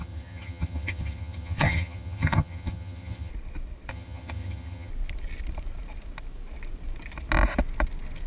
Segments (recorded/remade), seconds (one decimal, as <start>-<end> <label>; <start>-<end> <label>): 0.0-3.3 remade; 3.3-3.9 recorded; 3.9-4.9 remade; 4.9-8.3 recorded